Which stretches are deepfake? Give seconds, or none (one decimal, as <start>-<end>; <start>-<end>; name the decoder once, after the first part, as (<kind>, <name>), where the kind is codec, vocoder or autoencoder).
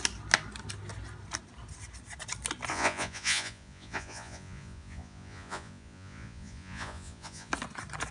2.7-7.5 (vocoder, Vocos)